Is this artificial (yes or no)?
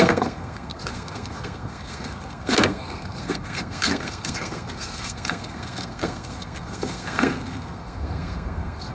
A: yes